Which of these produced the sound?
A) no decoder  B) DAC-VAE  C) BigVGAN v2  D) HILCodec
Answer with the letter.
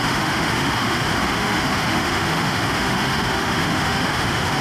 B